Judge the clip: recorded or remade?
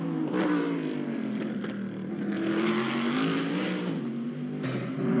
recorded